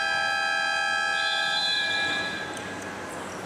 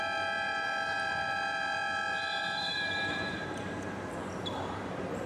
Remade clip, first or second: second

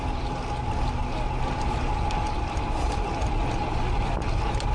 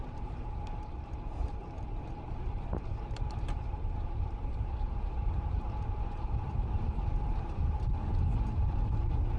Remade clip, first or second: second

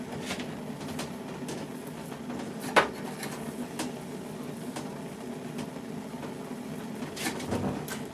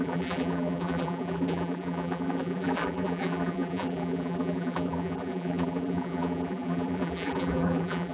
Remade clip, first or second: second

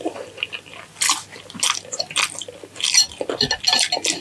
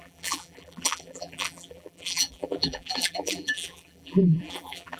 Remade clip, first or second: second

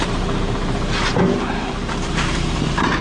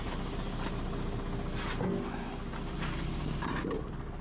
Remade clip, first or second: first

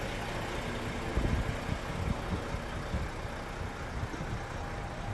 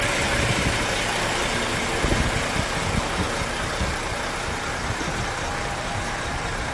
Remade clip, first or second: second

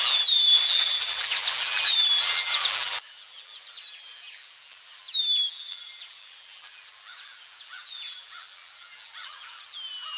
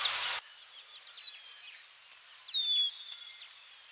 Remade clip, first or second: first